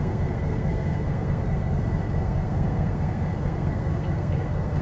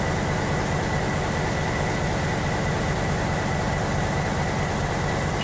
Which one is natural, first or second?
second